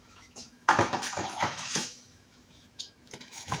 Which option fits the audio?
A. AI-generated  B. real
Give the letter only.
A